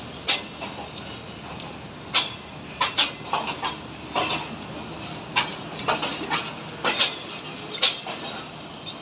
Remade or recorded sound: recorded